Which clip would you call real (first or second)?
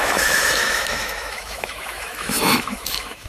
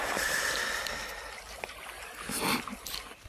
second